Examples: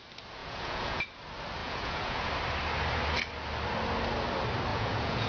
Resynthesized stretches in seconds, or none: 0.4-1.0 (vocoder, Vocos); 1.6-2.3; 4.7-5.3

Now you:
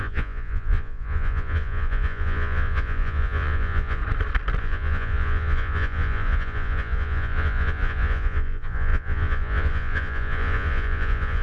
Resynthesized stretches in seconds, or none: 0.0-4.0 (vocoder, Vocos); 4.6-11.4

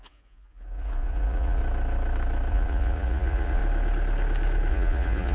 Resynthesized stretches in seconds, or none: 0.0-1.6 (vocoder, Vocos); 2.5-3.6; 4.7-5.3

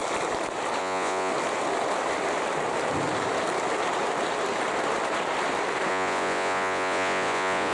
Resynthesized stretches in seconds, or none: 0.8-1.3 (vocoder, Vocos); 5.9-7.7

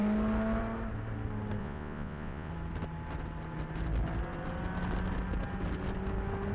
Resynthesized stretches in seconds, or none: 1.6-2.5 (vocoder, Vocos)